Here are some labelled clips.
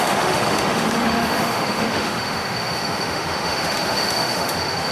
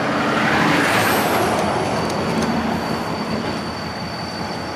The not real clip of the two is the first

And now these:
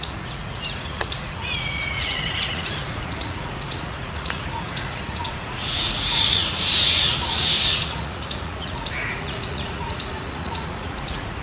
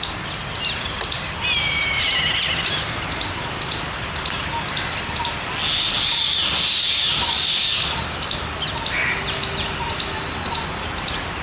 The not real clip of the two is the first